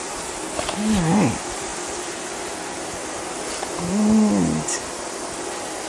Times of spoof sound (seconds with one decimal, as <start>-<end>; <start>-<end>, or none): none